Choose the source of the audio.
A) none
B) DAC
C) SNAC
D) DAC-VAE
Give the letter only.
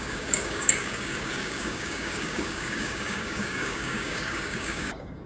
B